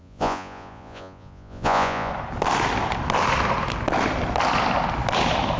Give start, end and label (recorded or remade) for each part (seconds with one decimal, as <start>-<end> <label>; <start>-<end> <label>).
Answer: 0.0-2.1 remade; 2.1-5.6 recorded